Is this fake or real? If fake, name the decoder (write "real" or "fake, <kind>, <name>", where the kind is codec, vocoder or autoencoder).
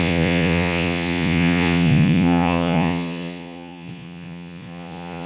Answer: fake, vocoder, Vocos